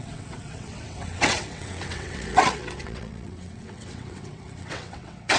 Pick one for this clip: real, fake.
fake